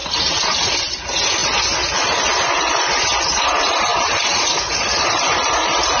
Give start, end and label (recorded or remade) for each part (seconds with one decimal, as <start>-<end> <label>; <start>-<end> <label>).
0.0-0.7 remade; 0.7-6.0 recorded